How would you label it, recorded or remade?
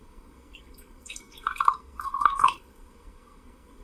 remade